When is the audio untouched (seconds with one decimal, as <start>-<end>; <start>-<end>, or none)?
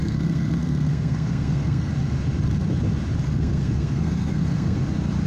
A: 1.9-3.2; 4.8-5.3